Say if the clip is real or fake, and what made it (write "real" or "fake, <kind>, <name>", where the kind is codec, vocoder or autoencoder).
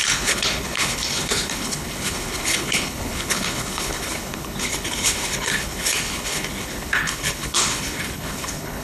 fake, codec, HILCodec